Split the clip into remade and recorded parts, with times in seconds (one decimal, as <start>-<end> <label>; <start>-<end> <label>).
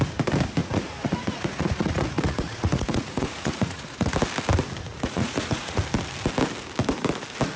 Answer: 0.0-0.6 recorded; 0.6-4.1 remade; 4.1-4.9 recorded; 4.9-5.8 remade; 5.8-7.6 recorded